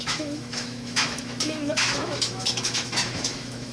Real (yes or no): no